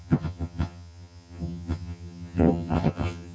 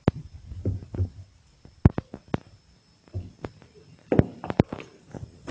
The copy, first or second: first